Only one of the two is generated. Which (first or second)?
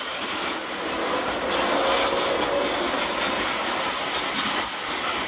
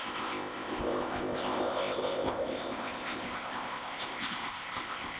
second